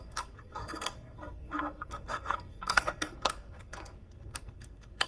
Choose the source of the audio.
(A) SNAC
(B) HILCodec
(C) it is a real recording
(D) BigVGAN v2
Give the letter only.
A